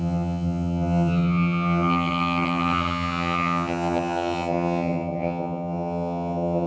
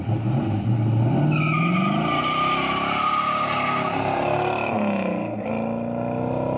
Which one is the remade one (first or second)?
first